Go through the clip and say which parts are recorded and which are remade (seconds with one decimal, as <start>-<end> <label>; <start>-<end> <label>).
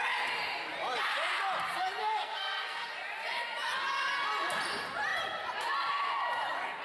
0.0-2.0 recorded; 2.0-2.9 remade; 2.9-6.8 recorded